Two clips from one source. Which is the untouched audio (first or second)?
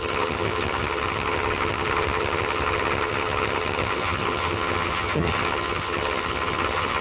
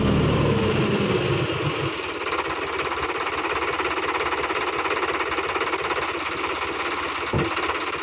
second